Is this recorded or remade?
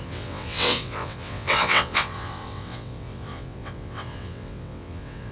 remade